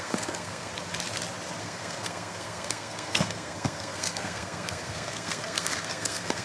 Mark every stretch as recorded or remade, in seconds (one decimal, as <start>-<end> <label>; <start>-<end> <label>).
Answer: 0.0-0.7 remade; 0.7-1.6 recorded; 1.6-6.4 remade